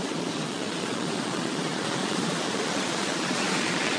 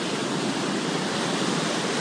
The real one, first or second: second